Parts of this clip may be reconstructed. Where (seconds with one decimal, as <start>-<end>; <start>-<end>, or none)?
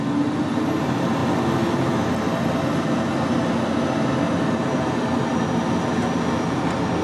none